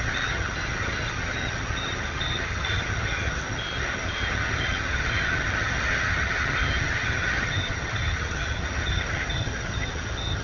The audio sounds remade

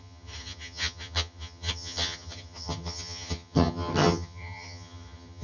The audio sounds remade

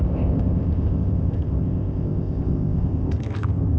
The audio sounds remade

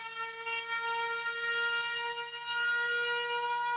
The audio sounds recorded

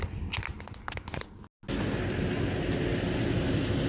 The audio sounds recorded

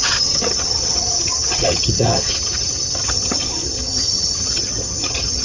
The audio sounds remade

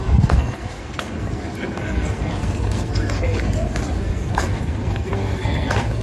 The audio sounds remade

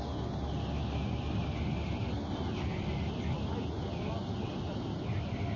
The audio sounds recorded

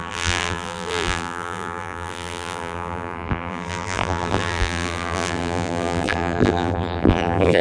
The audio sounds remade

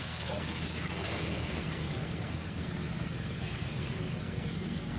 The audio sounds remade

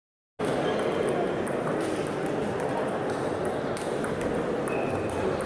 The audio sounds recorded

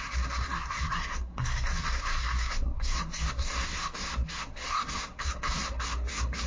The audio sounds remade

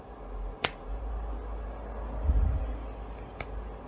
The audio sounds recorded